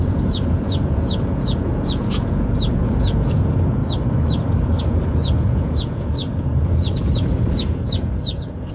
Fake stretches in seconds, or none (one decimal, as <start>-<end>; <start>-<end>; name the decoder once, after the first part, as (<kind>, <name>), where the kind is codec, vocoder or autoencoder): 0.0-3.8 (vocoder, Vocos); 4.8-8.7